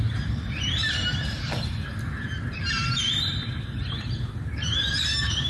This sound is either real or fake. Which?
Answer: fake